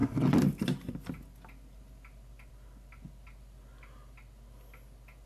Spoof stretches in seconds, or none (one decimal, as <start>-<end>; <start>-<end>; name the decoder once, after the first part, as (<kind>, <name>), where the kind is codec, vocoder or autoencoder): none